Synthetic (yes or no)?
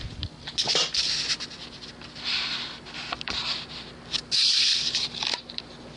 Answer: no